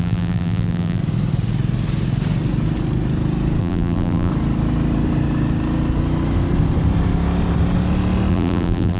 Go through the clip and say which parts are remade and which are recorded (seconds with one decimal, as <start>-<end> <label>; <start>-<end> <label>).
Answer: 0.0-1.0 remade; 1.0-3.6 recorded; 3.6-4.3 remade; 4.3-8.3 recorded; 8.3-9.0 remade